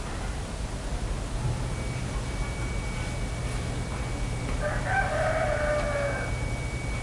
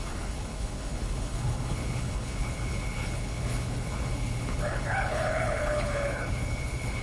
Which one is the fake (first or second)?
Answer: second